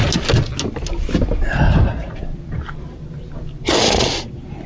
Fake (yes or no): no